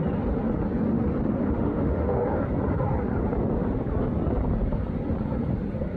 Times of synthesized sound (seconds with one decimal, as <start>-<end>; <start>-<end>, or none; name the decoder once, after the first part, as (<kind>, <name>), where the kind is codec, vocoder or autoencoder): 1.4-2.2 (autoencoder, DAC-VAE)